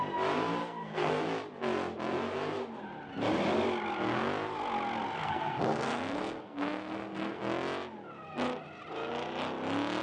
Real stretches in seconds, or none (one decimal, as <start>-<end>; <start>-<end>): 0.0-0.6; 1.1-5.2; 7.4-10.0